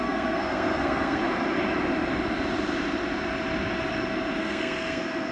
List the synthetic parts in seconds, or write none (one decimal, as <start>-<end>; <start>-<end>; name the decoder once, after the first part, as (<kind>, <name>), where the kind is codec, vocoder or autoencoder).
0.0-1.2 (codec, SNAC); 4.4-5.3

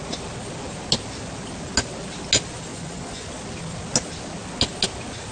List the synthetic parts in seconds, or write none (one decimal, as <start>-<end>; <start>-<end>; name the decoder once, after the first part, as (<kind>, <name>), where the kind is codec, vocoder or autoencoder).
2.7-3.3 (vocoder, Vocos)

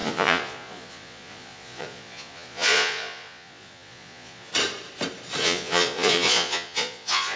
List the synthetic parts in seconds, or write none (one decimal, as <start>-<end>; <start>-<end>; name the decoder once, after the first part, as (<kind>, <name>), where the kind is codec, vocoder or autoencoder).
0.0-4.5 (vocoder, Vocos); 5.4-7.4

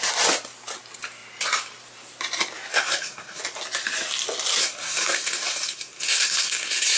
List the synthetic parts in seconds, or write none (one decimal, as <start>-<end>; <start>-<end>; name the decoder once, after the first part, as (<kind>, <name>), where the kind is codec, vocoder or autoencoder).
2.7-3.4 (codec, SNAC); 4.6-7.0

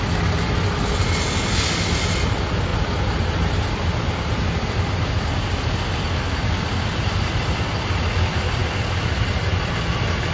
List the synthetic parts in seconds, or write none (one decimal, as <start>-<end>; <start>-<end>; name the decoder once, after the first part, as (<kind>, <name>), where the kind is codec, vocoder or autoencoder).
none

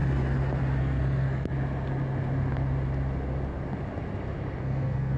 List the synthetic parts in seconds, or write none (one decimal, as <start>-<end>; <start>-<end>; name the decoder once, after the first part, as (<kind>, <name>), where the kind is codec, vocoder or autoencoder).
0.8-1.5 (codec, SNAC); 4.6-5.2

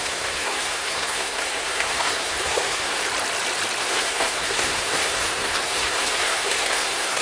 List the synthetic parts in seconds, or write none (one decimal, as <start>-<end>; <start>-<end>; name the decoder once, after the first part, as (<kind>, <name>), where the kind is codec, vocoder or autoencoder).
0.0-3.0 (codec, SNAC); 3.8-7.2